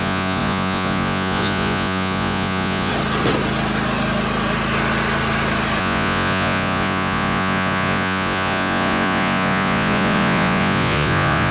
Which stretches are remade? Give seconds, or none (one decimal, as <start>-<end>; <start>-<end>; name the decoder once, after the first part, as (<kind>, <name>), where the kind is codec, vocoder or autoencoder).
0.0-2.9 (vocoder, Vocos); 5.8-11.5